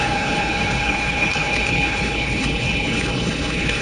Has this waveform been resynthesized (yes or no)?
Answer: yes